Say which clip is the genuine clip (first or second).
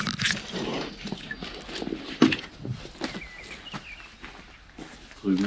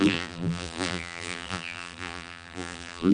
first